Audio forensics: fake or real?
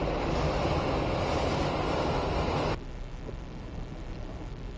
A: real